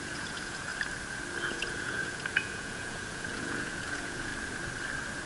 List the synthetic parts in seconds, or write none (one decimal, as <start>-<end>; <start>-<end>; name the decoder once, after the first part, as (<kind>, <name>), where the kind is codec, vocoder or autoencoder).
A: 0.0-0.7 (vocoder, Vocos); 1.4-4.3